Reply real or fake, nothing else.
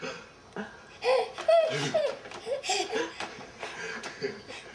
real